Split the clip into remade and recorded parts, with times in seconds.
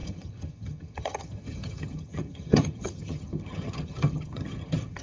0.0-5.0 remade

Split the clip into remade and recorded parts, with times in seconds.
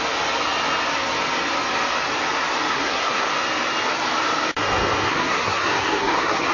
0.0-2.7 recorded; 2.7-3.3 remade; 3.3-5.1 recorded; 5.1-6.5 remade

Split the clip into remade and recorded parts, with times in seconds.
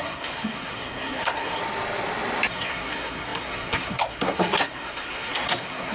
0.0-1.6 remade; 1.6-2.5 recorded; 2.5-5.9 remade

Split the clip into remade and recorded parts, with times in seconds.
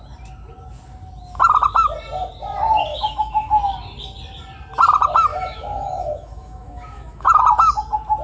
0.0-2.9 recorded; 2.9-3.5 remade; 3.5-5.3 recorded; 5.3-7.4 remade; 7.4-8.2 recorded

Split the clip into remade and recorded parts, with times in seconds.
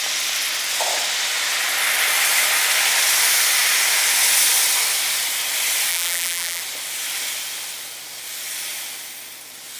0.0-5.9 recorded; 5.9-6.6 remade; 6.6-9.8 recorded